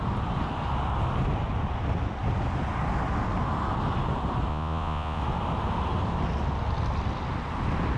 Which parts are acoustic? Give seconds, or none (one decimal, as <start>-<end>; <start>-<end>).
0.0-4.5; 5.2-8.0